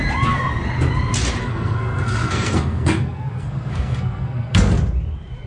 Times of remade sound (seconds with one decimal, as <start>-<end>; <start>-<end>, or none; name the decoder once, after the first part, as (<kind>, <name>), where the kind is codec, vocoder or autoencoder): 1.4-4.7 (codec, SNAC)